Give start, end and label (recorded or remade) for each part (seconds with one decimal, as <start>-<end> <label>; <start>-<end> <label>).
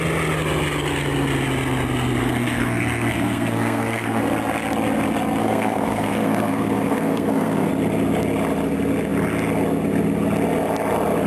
0.0-2.2 recorded; 2.2-4.2 remade; 4.2-5.4 recorded; 5.4-7.7 remade; 7.7-11.3 recorded